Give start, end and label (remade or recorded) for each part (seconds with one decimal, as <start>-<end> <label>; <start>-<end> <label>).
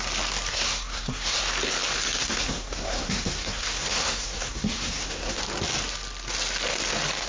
0.0-0.5 recorded; 0.5-1.4 remade; 1.4-2.2 recorded; 2.2-5.4 remade; 5.4-7.3 recorded